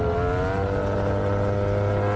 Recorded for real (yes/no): yes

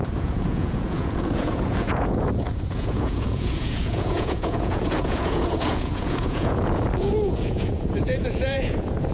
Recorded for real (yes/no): no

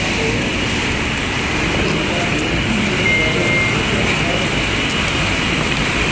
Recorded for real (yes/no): yes